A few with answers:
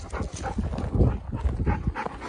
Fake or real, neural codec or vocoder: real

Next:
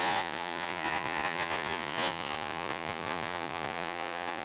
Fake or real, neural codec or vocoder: fake, vocoder, Vocos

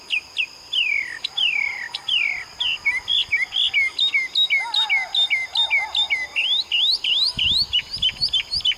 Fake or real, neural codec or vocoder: real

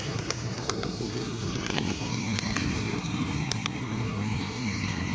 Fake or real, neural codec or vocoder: fake, codec, SNAC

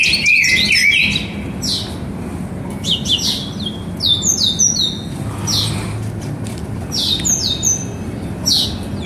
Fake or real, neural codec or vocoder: real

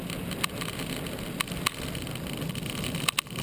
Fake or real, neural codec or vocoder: real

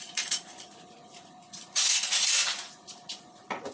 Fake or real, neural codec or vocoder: fake, vocoder, Vocos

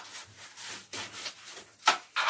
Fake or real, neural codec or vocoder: real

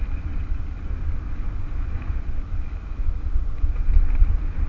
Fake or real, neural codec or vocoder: real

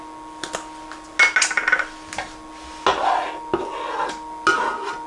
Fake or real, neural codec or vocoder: real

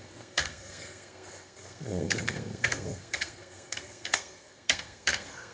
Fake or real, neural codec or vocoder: fake, codec, SNAC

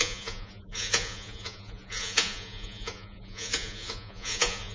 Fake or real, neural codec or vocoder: fake, vocoder, Vocos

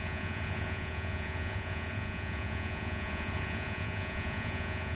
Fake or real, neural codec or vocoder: fake, vocoder, Vocos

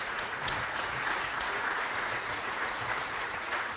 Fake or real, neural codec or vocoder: fake, vocoder, Vocos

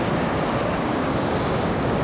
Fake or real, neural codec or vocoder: fake, codec, DAC